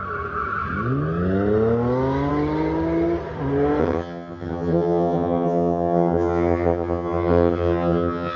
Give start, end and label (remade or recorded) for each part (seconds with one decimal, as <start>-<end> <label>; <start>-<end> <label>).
0.0-3.8 recorded; 3.8-8.4 remade